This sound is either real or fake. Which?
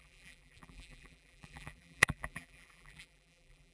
fake